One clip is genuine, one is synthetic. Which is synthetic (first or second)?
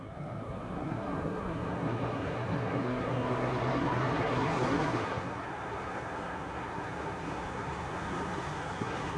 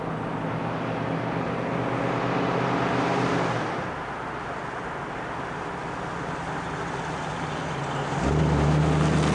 first